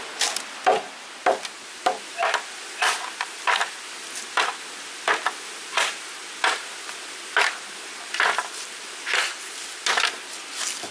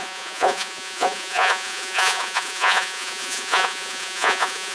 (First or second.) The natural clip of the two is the first